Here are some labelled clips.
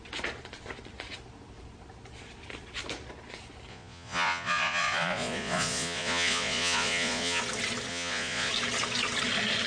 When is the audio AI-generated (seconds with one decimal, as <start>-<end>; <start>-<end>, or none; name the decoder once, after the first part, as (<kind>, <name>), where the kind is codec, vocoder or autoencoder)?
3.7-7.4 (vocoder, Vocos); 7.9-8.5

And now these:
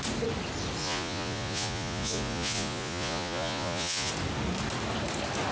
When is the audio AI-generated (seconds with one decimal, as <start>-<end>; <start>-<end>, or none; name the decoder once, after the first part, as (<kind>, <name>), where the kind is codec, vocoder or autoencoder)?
0.8-4.1 (vocoder, Vocos)

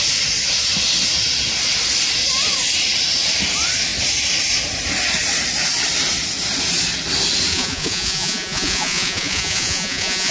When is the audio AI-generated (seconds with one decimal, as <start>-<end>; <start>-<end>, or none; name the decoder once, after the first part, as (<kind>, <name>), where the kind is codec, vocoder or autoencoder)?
7.5-10.3 (vocoder, Vocos)

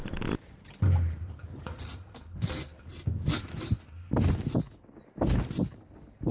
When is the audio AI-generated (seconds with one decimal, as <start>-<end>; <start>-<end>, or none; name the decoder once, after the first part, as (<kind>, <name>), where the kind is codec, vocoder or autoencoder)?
1.4-2.1 (vocoder, Vocos)